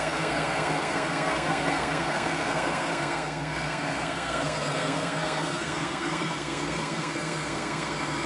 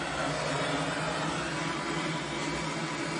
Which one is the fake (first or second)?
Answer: first